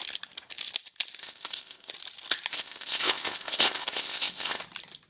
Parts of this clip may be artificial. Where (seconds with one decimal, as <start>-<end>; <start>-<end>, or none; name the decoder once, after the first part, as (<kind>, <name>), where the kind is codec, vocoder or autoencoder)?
1.2-1.9 (codec, ZipCodec); 2.5-4.6